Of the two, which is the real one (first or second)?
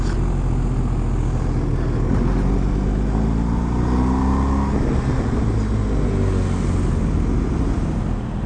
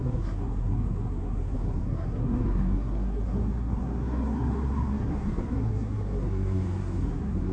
first